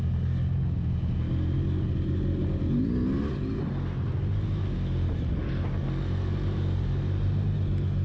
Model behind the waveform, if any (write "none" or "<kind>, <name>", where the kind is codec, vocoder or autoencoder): none